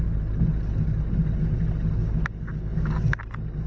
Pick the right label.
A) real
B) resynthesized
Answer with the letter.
A